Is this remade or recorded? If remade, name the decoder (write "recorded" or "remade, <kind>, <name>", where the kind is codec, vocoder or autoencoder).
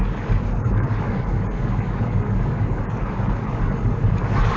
remade, codec, DAC